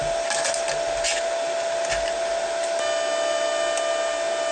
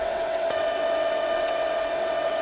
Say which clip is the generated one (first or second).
second